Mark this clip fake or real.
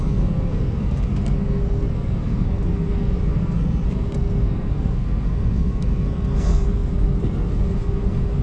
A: fake